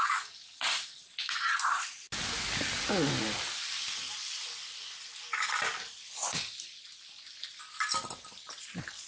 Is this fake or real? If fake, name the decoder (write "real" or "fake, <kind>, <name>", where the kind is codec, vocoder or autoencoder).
real